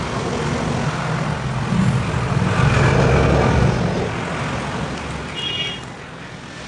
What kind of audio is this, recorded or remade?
recorded